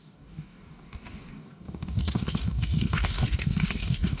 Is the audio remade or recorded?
remade